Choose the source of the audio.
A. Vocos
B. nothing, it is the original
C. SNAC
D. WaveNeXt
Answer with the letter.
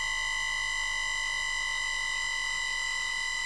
B